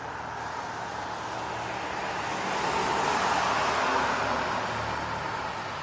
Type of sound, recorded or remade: recorded